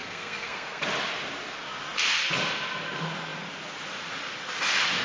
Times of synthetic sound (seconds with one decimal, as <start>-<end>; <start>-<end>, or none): 0.0-0.8